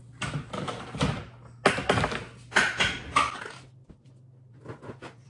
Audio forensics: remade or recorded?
recorded